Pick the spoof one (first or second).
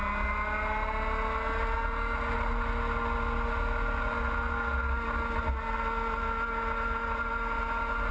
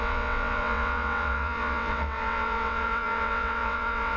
second